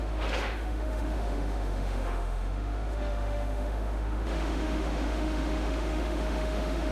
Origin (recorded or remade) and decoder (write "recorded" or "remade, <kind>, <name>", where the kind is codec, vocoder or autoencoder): remade, autoencoder, DAC-VAE